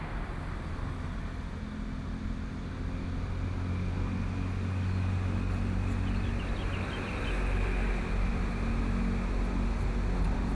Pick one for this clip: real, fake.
real